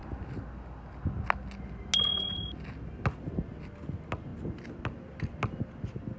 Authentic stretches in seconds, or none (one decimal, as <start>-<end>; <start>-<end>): 0.0-6.2